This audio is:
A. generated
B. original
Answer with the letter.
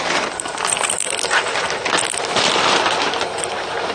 A